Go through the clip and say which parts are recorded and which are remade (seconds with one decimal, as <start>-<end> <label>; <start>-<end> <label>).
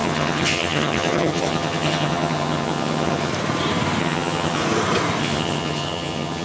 0.0-3.3 remade; 3.3-4.0 recorded; 4.0-4.6 remade; 4.6-5.2 recorded; 5.2-6.4 remade